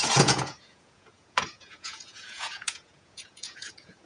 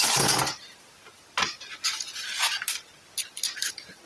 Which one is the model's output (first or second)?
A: first